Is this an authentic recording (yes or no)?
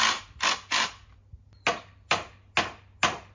yes